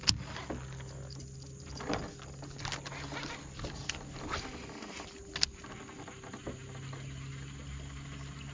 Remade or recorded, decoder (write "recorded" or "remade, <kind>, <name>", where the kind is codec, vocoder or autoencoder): recorded